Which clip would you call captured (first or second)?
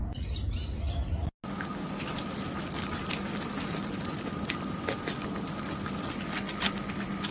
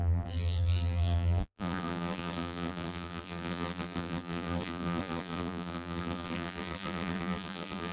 first